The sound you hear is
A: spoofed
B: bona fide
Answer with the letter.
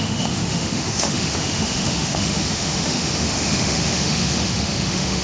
A